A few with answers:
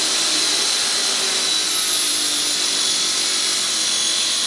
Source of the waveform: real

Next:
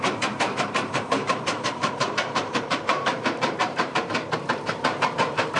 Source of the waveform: fake